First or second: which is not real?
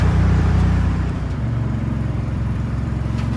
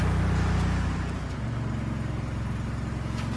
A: first